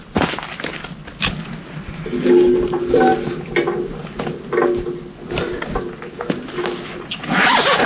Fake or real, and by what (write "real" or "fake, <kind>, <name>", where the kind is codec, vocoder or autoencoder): real